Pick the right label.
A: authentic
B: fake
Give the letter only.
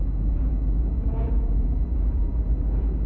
B